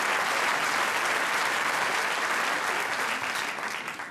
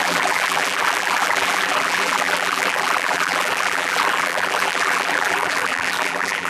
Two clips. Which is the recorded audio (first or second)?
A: first